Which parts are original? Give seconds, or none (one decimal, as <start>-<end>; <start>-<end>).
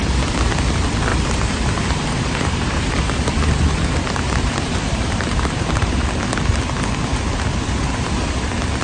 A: 0.0-1.1; 6.2-7.1; 8.4-8.8